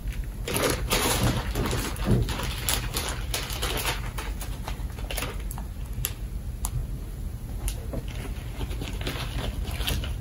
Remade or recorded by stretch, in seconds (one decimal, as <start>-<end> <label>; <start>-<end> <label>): 0.0-1.4 remade; 1.4-6.8 recorded; 6.8-8.0 remade; 8.0-10.2 recorded